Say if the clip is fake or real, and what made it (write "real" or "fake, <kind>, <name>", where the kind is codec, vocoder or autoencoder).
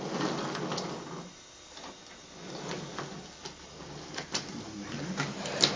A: real